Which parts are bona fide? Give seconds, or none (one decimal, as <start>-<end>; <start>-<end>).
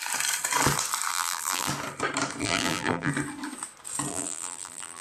0.0-1.1; 1.7-2.4; 3.1-4.1